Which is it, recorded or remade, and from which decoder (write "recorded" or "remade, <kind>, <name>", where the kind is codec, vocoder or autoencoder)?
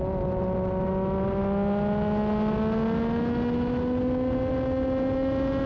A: recorded